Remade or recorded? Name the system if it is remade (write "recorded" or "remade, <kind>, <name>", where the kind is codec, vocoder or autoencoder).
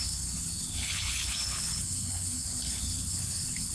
remade, codec, HILCodec